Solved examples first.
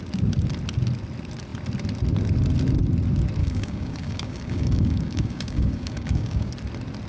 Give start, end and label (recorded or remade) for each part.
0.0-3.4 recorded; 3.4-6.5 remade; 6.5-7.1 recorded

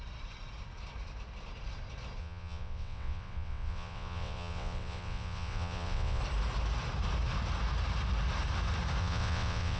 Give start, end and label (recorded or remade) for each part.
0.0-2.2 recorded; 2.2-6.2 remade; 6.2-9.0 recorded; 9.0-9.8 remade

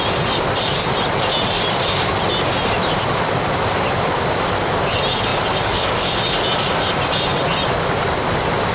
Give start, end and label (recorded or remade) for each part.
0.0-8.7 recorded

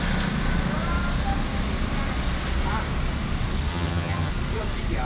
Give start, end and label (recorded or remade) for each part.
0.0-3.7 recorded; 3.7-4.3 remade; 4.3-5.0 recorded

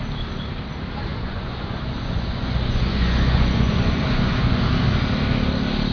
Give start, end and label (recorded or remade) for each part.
0.0-1.1 recorded; 1.1-4.6 remade; 4.6-5.9 recorded

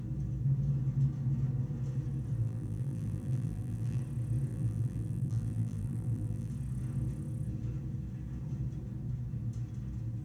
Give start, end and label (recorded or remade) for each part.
0.0-2.4 recorded; 2.4-4.0 remade; 4.0-4.5 recorded; 4.5-6.5 remade; 6.5-10.2 recorded